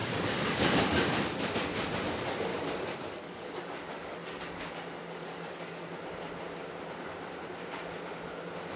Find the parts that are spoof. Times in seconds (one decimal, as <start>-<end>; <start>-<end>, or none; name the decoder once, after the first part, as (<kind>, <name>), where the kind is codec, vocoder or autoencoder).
0.0-0.8 (codec, DAC); 2.5-5.9